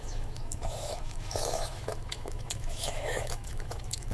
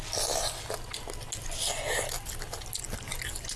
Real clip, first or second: second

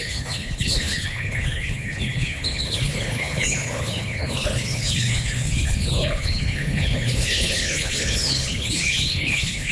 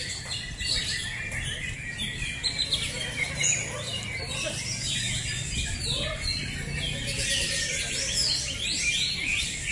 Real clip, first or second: second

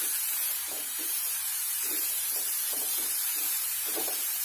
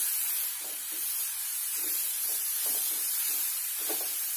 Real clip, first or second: second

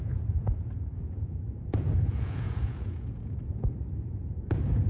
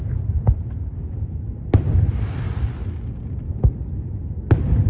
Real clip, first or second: second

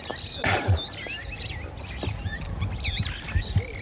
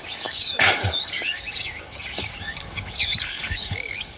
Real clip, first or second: first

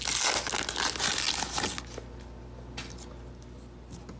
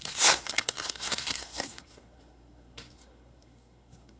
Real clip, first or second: first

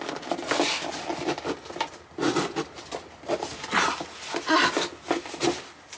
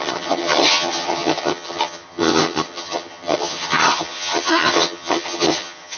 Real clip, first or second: first